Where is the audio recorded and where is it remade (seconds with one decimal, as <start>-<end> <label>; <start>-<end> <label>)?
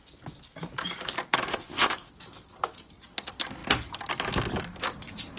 0.0-1.5 recorded; 1.5-2.1 remade; 2.1-5.4 recorded